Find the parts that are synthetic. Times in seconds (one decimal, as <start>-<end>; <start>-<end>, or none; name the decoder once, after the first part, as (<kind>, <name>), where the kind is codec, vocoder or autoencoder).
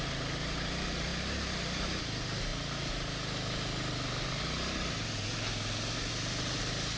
none